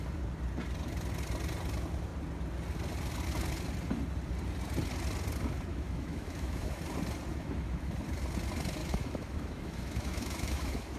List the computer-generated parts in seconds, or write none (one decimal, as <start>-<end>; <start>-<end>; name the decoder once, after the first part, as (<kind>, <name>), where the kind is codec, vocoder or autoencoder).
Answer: 5.7-6.8 (autoencoder, DAC-VAE); 7.3-7.9; 8.8-11.0

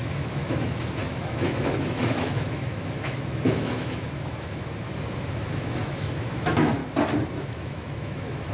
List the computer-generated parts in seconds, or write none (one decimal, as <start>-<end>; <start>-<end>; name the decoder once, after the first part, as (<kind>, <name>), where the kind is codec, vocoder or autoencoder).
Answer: 0.0-6.8 (autoencoder, DAC-VAE); 7.4-8.5